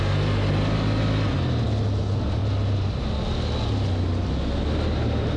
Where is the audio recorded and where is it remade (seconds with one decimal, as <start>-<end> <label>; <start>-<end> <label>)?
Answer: 0.0-5.4 recorded